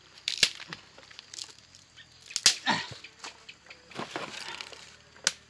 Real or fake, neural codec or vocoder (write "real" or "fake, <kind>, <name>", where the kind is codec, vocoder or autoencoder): real